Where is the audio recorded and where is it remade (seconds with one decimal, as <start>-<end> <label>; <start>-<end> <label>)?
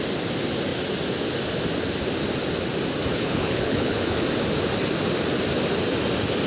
0.0-3.1 recorded; 3.1-4.2 remade; 4.2-6.5 recorded